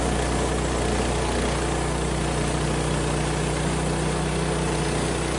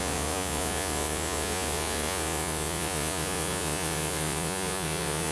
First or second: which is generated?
second